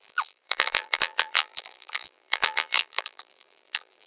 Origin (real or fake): fake